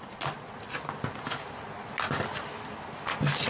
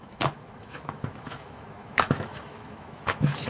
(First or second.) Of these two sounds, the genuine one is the first